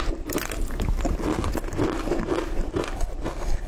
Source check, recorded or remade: recorded